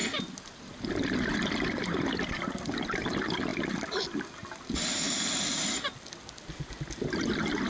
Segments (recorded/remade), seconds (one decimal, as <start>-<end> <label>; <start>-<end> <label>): 0.0-7.7 recorded